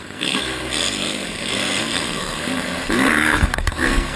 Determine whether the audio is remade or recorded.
remade